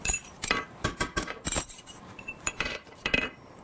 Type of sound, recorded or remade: remade